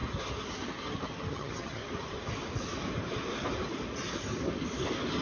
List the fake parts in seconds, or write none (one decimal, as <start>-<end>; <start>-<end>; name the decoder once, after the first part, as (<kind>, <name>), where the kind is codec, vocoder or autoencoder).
1.3-1.8 (vocoder, HiFi-GAN)